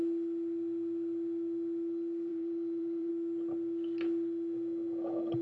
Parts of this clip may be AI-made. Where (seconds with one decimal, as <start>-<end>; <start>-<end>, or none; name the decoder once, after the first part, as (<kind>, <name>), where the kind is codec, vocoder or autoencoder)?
2.3-3.1 (vocoder, BigVGAN v2)